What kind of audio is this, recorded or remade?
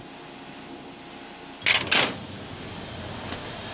recorded